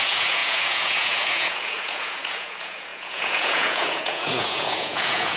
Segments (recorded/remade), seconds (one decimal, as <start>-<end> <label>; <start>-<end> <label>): 0.0-5.4 remade